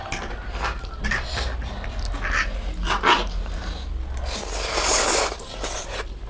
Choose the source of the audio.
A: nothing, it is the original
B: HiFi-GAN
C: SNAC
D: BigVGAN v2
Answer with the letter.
A